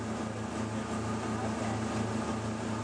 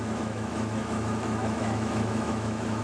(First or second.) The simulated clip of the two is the second